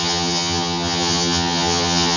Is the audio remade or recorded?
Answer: remade